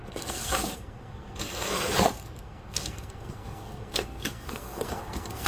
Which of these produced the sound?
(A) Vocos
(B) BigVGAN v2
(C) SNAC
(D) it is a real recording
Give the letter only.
C